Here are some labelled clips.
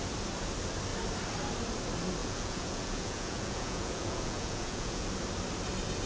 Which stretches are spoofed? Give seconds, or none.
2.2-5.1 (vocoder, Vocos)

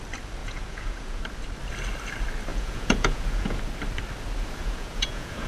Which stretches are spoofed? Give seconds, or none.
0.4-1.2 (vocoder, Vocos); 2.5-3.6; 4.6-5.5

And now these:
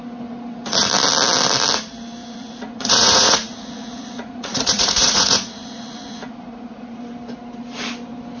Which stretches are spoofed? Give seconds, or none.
2.2-7.0 (vocoder, Vocos)